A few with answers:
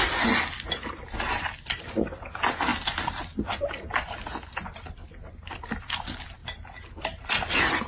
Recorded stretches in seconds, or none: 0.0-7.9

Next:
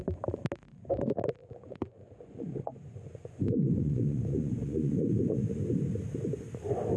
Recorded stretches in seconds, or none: 0.0-1.4; 5.6-7.0

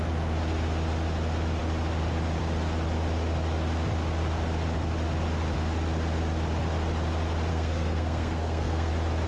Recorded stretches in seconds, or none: 0.0-7.5; 8.9-9.3

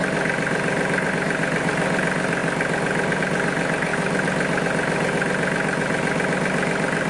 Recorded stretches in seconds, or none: 0.0-7.1